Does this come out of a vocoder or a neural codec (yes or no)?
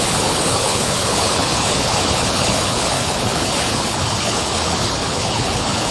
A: yes